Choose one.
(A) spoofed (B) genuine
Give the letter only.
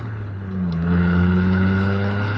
A